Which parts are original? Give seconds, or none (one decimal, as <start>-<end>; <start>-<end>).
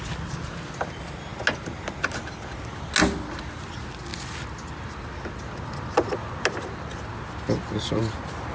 0.0-8.5